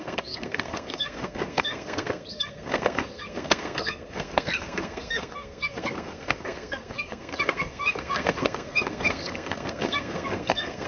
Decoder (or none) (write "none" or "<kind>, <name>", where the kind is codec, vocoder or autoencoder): codec, SNAC